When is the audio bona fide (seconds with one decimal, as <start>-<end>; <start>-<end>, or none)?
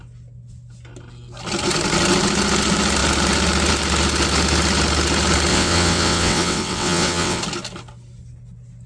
0.0-5.5; 7.4-8.9